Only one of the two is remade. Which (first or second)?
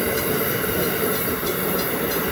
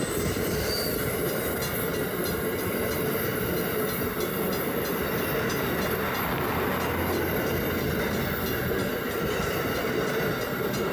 first